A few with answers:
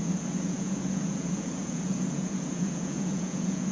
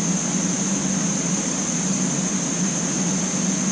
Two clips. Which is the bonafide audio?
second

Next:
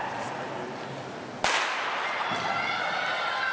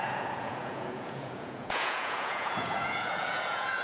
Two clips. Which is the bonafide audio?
first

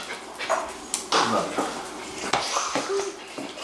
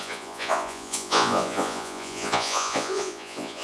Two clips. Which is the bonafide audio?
first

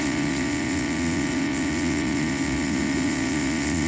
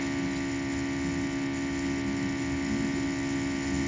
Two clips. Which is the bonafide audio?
second